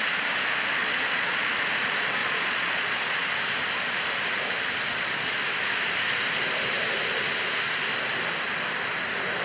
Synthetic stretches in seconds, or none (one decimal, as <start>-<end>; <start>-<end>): 0.8-1.5; 2.2-3.1; 4.9-5.4